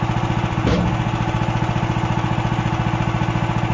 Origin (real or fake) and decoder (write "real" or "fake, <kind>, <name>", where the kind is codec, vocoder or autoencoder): real